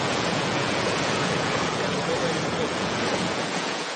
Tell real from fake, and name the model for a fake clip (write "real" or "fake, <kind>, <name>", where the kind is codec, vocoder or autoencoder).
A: fake, vocoder, Vocos